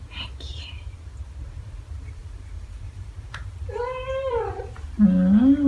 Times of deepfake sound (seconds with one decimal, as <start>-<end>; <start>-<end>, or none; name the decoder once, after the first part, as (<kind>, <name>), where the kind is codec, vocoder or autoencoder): 2.2-4.4 (vocoder, BigVGAN v2)

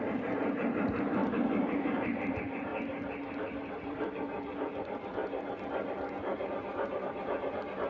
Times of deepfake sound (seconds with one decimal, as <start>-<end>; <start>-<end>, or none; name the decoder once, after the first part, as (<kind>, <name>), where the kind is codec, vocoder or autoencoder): 0.0-2.7 (vocoder, BigVGAN v2); 3.7-5.2; 5.9-7.9

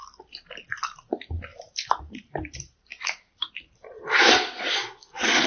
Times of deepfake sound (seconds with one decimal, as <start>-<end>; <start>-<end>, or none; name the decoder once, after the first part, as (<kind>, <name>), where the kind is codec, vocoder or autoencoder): 1.5-3.5 (vocoder, BigVGAN v2)

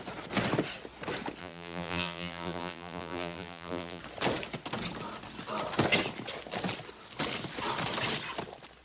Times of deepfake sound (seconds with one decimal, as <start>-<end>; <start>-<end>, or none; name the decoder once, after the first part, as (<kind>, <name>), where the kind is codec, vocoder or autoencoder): 1.4-4.0 (vocoder, BigVGAN v2)